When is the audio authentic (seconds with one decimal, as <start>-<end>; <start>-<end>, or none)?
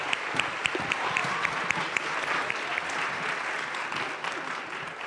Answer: 0.0-5.1